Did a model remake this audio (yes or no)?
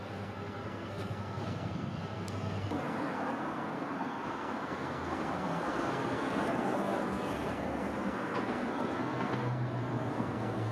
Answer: yes